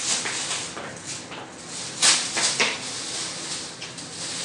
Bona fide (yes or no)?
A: yes